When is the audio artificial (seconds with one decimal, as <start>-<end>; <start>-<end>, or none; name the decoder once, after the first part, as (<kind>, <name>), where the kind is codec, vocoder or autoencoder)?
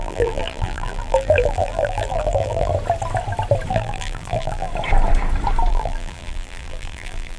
0.0-2.7 (vocoder, BigVGAN v2); 3.7-4.7; 5.7-7.4